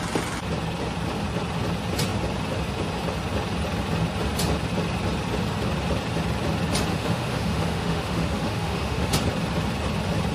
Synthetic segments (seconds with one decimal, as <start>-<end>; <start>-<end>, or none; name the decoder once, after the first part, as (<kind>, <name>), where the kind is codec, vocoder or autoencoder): 6.9-9.1 (autoencoder, DAC-VAE)